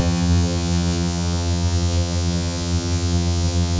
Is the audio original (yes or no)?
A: no